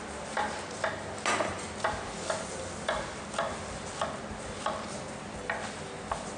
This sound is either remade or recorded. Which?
recorded